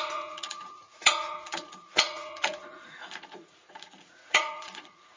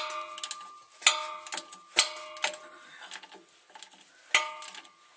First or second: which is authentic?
second